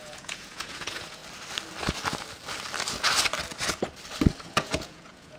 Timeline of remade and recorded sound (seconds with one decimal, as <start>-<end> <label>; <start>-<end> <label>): 0.0-1.2 remade; 1.2-4.4 recorded; 4.4-5.4 remade